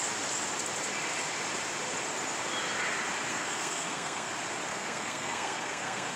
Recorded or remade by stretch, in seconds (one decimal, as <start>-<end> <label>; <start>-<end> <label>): 0.0-3.3 recorded; 3.3-4.3 remade; 4.3-4.7 recorded; 4.7-6.2 remade

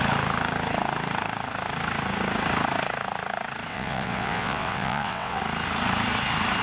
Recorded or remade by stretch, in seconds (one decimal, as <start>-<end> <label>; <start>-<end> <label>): 0.0-3.7 recorded; 3.7-5.4 remade; 5.4-6.6 recorded

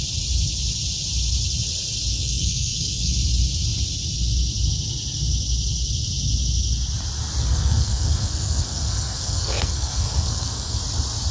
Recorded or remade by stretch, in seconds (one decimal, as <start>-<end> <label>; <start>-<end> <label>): 0.0-2.1 recorded; 2.1-3.1 remade; 3.1-7.4 recorded; 7.4-10.8 remade; 10.8-11.3 recorded

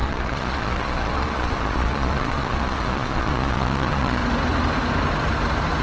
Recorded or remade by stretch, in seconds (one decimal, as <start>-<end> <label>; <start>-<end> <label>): 0.0-4.2 remade; 4.2-5.8 recorded

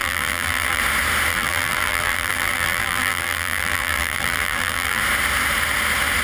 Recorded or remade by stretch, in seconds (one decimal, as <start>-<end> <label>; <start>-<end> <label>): 0.0-0.8 remade; 0.8-1.3 recorded; 1.3-5.0 remade; 5.0-6.2 recorded

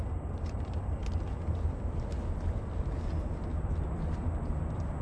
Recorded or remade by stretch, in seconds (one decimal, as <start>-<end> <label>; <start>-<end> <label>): 0.0-1.0 remade; 1.0-3.9 recorded; 3.9-5.0 remade

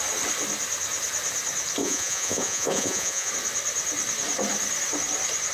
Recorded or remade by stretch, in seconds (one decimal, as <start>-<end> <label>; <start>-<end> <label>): 0.0-1.8 recorded; 1.8-3.3 remade; 3.3-5.5 recorded

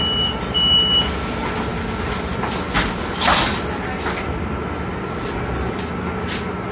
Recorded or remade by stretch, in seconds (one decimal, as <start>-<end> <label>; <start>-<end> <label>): 0.0-6.7 recorded